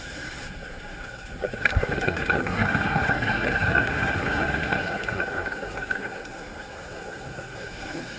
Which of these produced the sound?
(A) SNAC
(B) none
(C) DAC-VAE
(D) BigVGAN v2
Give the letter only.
A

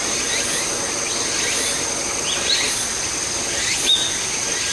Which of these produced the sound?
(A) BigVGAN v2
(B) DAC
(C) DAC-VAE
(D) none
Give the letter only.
D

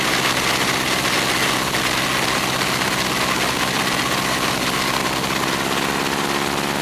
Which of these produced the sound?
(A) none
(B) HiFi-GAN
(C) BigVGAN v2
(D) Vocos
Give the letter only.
A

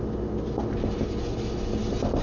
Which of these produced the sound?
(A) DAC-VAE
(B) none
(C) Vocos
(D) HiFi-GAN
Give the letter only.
B